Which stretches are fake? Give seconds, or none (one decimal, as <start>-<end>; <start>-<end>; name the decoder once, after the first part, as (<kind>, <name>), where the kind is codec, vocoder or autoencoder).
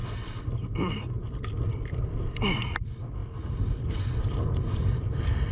none